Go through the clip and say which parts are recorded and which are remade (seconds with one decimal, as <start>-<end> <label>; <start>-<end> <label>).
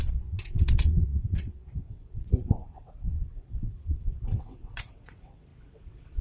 0.0-6.2 remade